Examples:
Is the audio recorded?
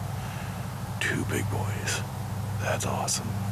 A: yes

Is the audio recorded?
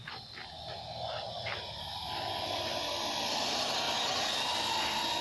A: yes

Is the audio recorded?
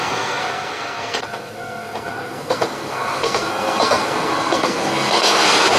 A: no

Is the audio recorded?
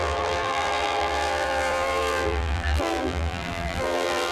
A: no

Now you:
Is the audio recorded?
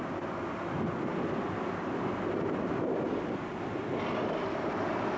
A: yes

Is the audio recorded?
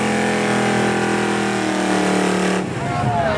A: yes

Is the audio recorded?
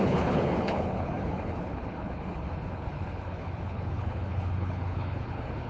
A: no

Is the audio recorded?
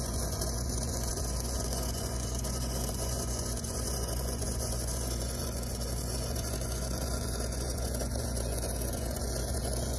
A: no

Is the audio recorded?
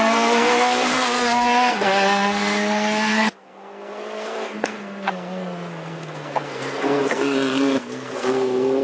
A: no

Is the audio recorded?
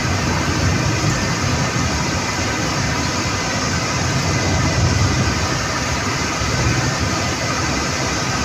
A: yes